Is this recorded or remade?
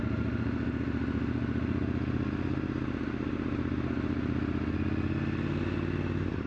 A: recorded